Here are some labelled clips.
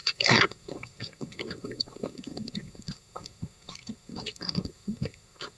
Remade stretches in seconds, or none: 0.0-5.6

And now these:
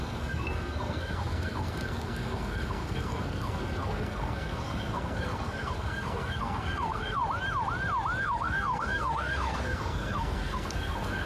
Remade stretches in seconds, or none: 0.0-7.2; 8.2-11.3